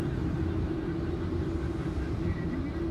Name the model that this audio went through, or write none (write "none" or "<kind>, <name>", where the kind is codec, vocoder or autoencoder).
none